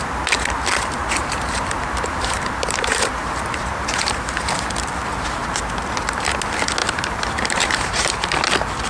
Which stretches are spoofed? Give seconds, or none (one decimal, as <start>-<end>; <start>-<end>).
1.0-4.4; 6.8-8.1